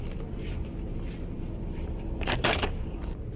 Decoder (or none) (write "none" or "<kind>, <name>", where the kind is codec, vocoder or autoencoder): vocoder, BigVGAN v2